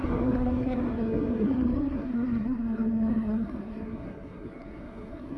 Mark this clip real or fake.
fake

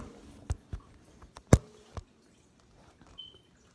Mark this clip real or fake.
real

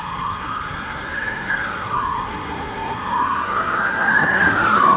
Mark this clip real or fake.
fake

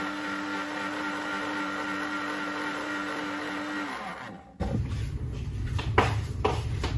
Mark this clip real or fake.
real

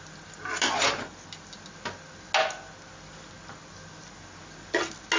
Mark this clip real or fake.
real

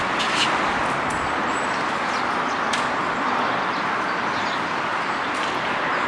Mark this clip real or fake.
real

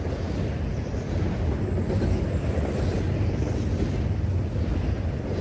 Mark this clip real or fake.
real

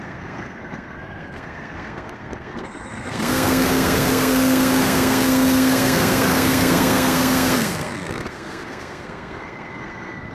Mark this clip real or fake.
fake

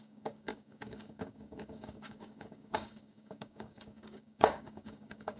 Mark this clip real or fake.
fake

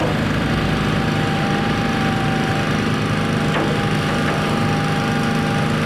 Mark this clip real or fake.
real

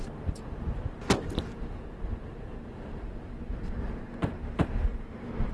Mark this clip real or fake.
fake